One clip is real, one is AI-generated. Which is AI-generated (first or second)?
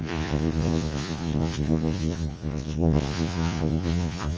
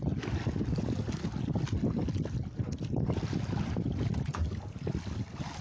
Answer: first